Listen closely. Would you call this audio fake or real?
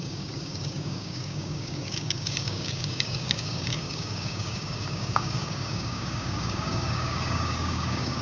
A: fake